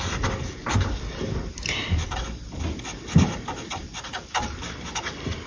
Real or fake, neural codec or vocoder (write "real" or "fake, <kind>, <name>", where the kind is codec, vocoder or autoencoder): real